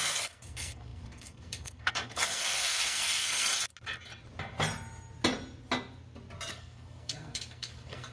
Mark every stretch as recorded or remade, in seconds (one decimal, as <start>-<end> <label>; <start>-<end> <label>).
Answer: 0.0-3.5 remade; 3.5-6.5 recorded; 6.5-8.1 remade

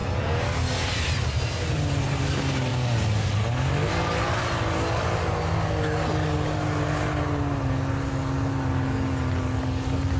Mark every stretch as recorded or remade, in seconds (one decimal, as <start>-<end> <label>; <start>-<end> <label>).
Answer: 0.0-10.2 recorded

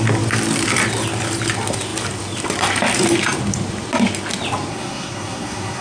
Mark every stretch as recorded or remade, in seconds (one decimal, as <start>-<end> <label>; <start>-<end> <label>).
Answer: 0.0-4.7 recorded; 4.7-5.8 remade

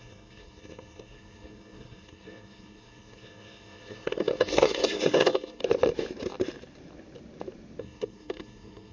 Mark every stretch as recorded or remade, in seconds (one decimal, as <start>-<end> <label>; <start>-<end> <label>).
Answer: 0.0-5.6 remade; 5.6-7.8 recorded; 7.8-8.9 remade

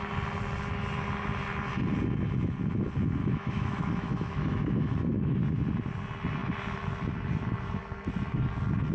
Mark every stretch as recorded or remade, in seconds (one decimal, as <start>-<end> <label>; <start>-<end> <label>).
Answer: 0.0-3.2 recorded; 3.2-5.4 remade; 5.4-8.9 recorded

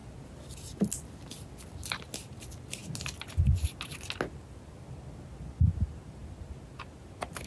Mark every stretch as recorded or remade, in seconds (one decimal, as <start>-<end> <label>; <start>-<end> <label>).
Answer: 0.0-7.5 recorded